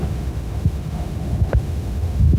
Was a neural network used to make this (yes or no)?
yes